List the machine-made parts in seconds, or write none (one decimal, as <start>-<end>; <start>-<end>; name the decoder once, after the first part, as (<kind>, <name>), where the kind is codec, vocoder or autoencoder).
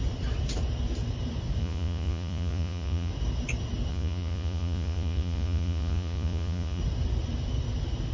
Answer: 1.6-3.1 (vocoder, Vocos); 3.9-6.8